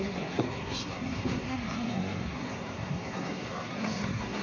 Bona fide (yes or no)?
no